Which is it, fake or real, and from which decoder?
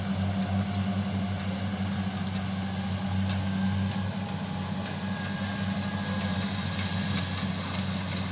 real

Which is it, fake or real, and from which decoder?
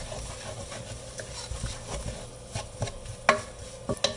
real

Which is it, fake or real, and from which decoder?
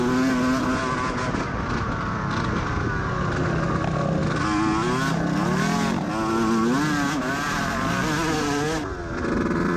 real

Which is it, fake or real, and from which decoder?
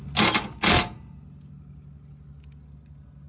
real